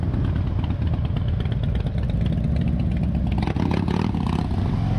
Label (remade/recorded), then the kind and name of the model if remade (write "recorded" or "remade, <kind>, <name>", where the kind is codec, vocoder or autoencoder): recorded